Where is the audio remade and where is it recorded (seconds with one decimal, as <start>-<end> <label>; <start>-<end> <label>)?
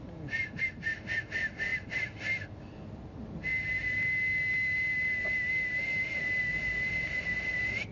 0.0-7.9 recorded